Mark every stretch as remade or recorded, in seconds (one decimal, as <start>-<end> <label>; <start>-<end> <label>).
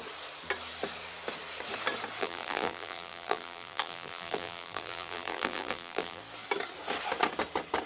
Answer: 0.0-2.2 recorded; 2.2-6.2 remade; 6.2-7.9 recorded